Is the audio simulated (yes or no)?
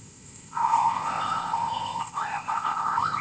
yes